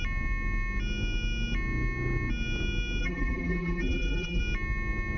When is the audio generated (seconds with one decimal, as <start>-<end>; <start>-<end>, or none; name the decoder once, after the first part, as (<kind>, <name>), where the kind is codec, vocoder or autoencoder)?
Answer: 3.0-4.4 (vocoder, BigVGAN v2)